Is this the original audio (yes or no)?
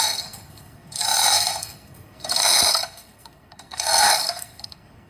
no